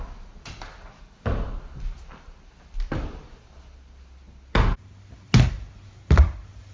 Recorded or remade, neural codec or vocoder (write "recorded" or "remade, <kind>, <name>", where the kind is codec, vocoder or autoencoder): recorded